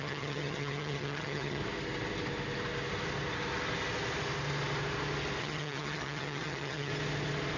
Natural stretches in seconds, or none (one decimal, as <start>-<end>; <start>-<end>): 1.6-5.4; 6.9-7.6

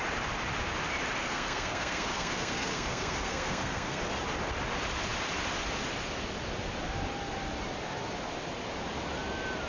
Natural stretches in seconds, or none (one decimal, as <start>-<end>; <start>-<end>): 0.0-1.2; 4.0-9.7

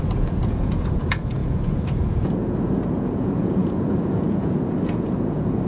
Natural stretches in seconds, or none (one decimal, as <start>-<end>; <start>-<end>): none

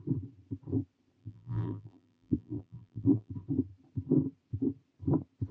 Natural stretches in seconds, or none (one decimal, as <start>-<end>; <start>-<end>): 0.0-1.2; 3.3-5.5

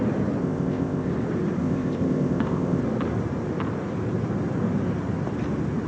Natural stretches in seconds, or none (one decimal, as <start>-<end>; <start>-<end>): 0.0-0.4; 1.1-1.6; 2.8-5.9

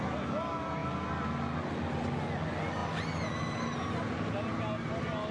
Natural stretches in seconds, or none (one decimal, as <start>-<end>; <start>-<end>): 0.0-5.3

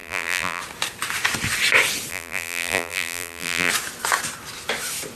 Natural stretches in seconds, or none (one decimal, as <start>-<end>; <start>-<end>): 0.6-2.1; 3.7-5.1

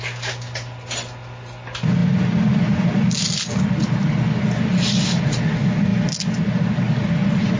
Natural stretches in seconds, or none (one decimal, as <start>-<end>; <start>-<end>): 0.0-7.6